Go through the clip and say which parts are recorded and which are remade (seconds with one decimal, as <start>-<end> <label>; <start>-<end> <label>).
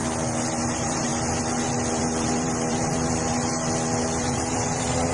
0.0-0.7 recorded; 0.7-1.1 remade; 1.1-2.0 recorded; 2.0-3.5 remade; 3.5-4.2 recorded; 4.2-5.1 remade